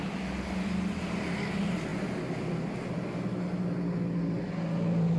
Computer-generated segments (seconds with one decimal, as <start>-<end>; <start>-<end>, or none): none